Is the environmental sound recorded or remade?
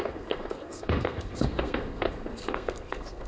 remade